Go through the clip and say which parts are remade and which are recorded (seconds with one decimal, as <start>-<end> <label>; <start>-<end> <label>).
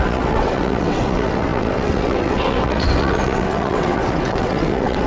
0.0-5.1 remade